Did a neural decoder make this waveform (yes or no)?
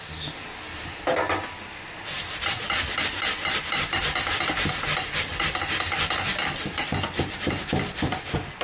no